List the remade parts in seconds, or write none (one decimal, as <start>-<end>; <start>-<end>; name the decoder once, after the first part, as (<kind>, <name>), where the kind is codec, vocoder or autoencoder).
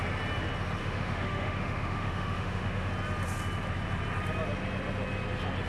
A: 0.8-2.9 (autoencoder, DAC-VAE)